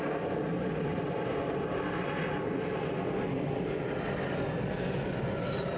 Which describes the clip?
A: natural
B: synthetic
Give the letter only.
A